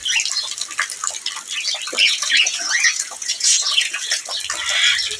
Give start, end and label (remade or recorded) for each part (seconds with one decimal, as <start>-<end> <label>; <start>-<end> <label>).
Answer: 0.0-2.0 recorded; 2.0-4.2 remade; 4.2-5.2 recorded